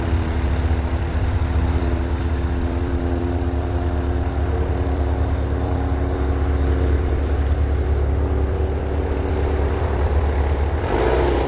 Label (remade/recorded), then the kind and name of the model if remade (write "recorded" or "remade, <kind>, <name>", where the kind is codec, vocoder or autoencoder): remade, vocoder, BigVGAN v2